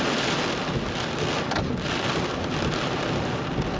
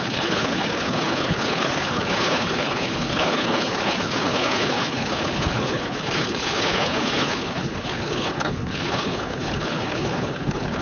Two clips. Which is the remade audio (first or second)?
second